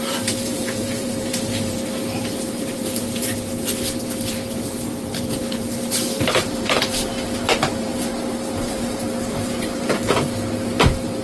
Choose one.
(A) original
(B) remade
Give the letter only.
B